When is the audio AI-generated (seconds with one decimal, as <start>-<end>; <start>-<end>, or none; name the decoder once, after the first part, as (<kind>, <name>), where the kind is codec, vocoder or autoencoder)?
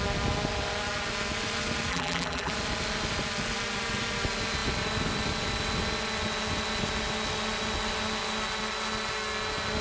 1.9-2.5 (vocoder, BigVGAN v2)